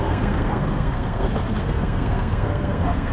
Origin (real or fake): fake